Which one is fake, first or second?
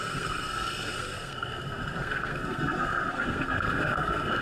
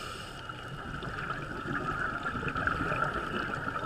first